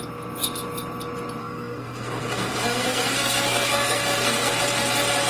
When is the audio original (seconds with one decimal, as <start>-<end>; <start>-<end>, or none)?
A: 0.0-1.4; 4.6-5.3